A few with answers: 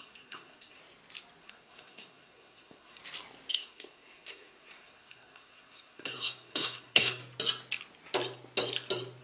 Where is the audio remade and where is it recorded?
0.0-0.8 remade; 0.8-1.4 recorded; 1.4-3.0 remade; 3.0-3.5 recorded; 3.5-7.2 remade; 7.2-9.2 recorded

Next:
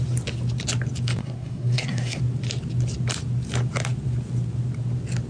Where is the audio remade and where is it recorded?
0.0-1.2 recorded; 1.2-2.2 remade; 2.2-5.3 recorded

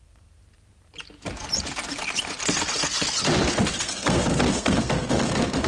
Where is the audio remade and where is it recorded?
0.0-0.4 remade; 0.4-3.8 recorded; 3.8-5.7 remade

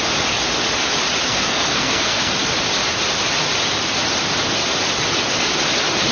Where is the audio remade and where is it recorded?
0.0-1.3 recorded; 1.3-2.3 remade; 2.3-6.1 recorded

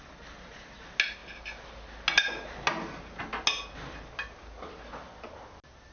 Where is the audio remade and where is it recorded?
0.0-5.9 recorded

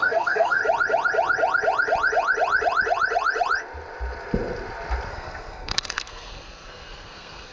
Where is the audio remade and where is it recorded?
0.0-0.6 remade; 0.6-5.1 recorded; 5.1-7.5 remade

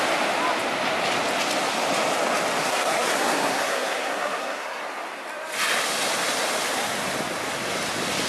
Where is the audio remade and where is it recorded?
0.0-2.6 recorded; 2.6-4.8 remade; 4.8-8.3 recorded